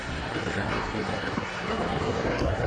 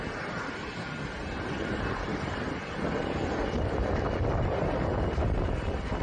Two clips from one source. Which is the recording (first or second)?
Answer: second